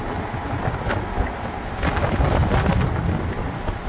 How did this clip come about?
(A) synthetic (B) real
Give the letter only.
B